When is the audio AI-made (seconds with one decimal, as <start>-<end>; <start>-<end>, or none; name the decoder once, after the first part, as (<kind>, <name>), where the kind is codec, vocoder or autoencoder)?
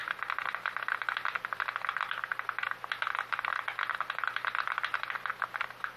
none